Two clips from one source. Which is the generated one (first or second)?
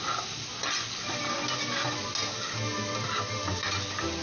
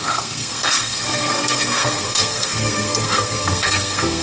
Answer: second